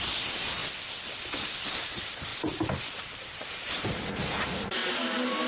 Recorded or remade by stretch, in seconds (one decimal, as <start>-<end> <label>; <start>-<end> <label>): 0.0-0.6 remade; 0.6-1.8 recorded; 1.8-2.3 remade; 2.3-3.0 recorded; 3.0-4.8 remade; 4.8-5.5 recorded